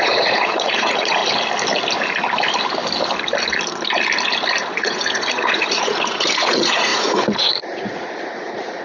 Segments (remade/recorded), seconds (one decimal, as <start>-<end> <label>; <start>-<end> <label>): 0.0-1.2 remade; 1.2-4.7 recorded; 4.7-8.8 remade